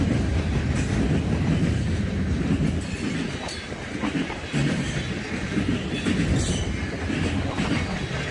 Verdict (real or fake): real